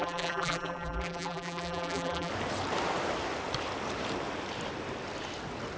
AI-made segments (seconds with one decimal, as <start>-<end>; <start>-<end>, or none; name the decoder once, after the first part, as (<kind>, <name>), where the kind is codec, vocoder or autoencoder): 0.0-2.3 (vocoder, BigVGAN v2)